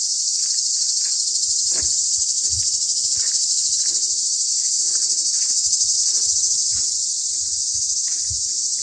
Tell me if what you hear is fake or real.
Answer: real